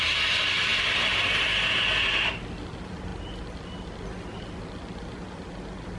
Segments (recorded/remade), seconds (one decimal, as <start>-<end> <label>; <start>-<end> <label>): 0.0-0.7 recorded; 0.7-2.3 remade; 2.3-6.0 recorded